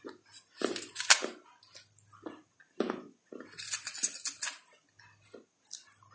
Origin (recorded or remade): recorded